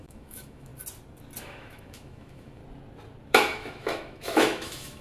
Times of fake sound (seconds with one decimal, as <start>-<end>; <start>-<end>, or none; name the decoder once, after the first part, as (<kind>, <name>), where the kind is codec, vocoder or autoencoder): 0.0-0.7 (autoencoder, DAC-VAE); 1.4-2.6; 3.3-5.0